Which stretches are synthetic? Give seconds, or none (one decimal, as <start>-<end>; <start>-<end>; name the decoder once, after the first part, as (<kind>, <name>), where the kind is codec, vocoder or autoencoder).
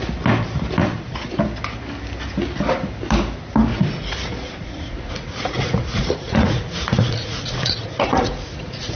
0.8-1.4 (vocoder, Vocos); 3.7-9.0